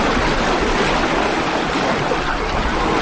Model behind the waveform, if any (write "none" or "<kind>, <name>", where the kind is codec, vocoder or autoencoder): none